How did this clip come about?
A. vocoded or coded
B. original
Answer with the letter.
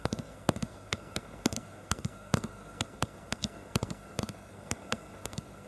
A